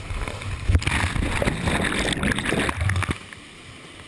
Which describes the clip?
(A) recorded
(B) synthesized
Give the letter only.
A